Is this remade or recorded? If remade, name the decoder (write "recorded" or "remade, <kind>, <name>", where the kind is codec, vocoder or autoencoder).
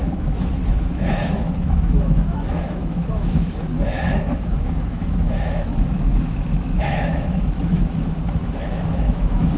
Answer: remade, autoencoder, DAC-VAE